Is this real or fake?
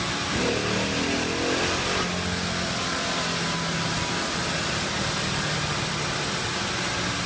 real